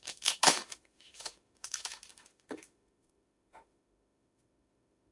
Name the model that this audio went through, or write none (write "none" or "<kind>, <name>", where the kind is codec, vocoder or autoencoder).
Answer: autoencoder, DAC-VAE